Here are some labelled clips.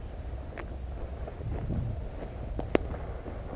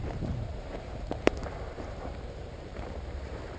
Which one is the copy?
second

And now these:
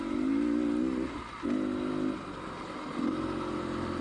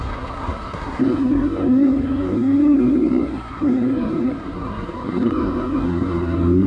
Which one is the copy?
second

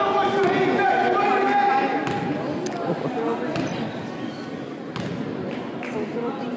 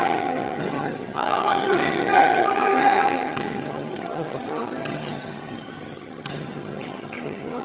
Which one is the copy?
second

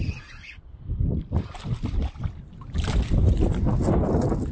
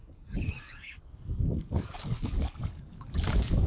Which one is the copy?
second